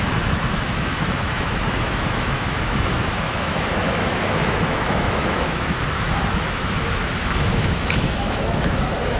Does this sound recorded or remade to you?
remade